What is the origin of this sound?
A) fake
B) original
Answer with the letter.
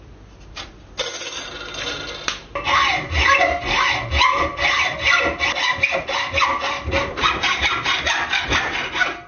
B